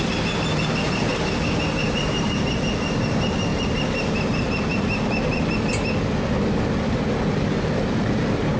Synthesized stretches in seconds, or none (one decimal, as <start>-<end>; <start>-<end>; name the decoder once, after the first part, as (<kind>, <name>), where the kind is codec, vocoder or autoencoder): 1.8-2.6 (vocoder, BigVGAN v2); 3.5-5.7